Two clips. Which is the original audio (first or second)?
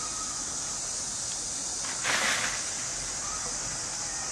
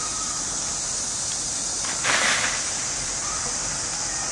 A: first